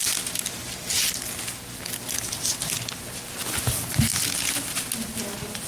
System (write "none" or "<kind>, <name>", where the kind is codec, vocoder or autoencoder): none